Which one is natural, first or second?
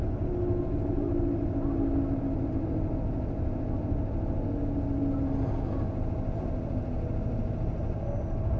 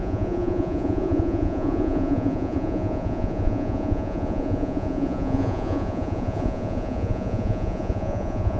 first